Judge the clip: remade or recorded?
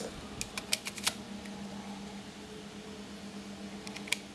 recorded